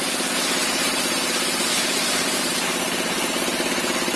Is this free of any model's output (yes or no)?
no